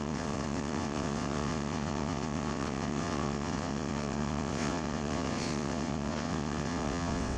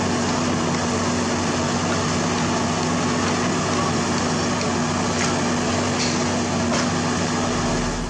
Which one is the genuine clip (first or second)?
second